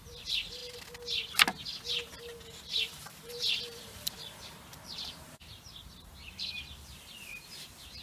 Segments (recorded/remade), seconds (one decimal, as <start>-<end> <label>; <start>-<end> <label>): 0.0-2.3 recorded; 2.3-7.1 remade; 7.1-8.0 recorded